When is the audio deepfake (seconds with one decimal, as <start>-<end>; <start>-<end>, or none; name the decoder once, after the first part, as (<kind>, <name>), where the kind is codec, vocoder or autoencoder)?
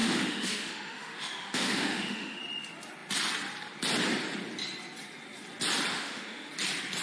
0.0-2.4 (autoencoder, DAC-VAE); 5.9-6.5